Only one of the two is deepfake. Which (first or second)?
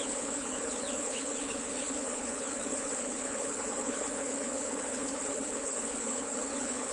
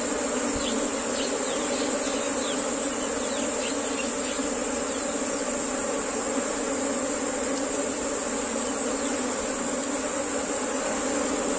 first